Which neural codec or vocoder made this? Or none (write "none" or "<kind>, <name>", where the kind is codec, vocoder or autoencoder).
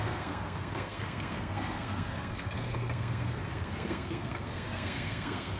codec, SNAC